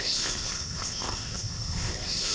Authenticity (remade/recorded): remade